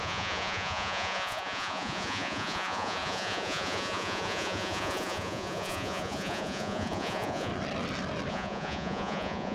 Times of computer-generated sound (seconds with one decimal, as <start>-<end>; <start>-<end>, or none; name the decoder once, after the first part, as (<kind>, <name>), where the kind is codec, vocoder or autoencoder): 0.0-7.5 (vocoder, Vocos); 8.3-9.5